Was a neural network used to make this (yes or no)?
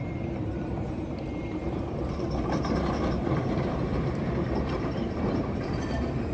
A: yes